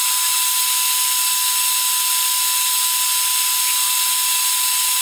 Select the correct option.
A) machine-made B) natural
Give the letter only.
B